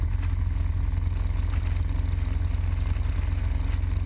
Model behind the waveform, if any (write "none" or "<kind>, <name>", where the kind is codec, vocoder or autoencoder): none